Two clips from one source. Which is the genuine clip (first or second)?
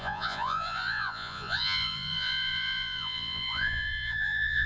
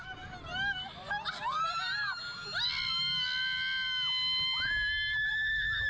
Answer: second